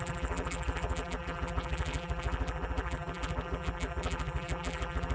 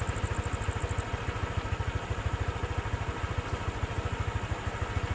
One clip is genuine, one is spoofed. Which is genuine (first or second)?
second